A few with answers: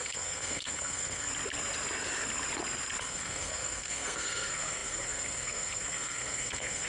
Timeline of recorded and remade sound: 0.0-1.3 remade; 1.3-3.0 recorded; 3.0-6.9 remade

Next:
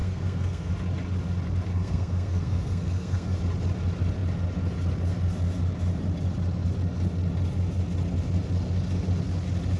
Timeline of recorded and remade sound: 0.0-0.7 remade; 0.7-1.7 recorded; 1.7-3.4 remade; 3.4-9.8 recorded

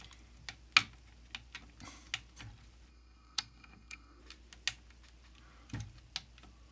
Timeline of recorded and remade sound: 0.0-2.9 recorded; 2.9-4.2 remade; 4.2-6.7 recorded

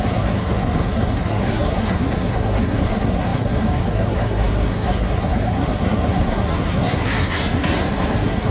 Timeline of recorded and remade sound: 0.0-8.5 remade